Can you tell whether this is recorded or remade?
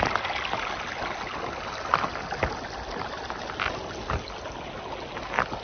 recorded